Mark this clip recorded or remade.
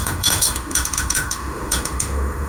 remade